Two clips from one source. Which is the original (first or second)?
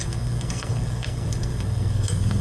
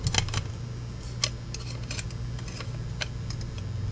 second